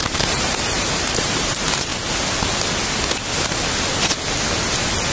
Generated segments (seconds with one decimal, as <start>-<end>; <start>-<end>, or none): 0.0-1.9